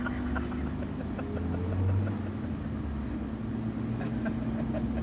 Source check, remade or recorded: recorded